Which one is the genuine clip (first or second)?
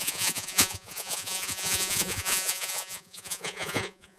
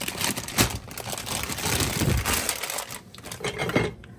second